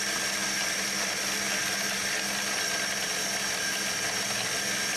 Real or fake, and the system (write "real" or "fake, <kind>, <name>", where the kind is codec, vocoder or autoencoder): real